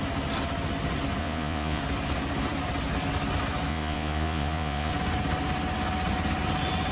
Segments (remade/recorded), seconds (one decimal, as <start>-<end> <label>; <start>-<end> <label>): 0.0-1.2 recorded; 1.2-1.8 remade; 1.8-3.7 recorded; 3.7-4.9 remade; 4.9-6.9 recorded